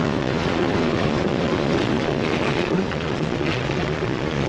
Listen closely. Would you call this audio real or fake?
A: fake